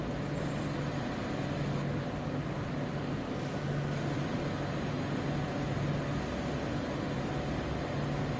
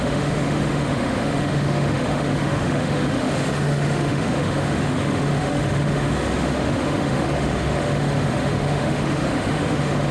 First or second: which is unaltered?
first